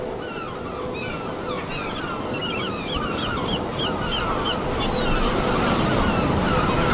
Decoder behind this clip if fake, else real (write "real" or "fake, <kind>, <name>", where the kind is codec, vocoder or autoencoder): real